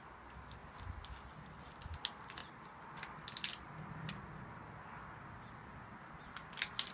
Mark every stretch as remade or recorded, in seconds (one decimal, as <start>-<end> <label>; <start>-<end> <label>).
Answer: 0.0-6.9 recorded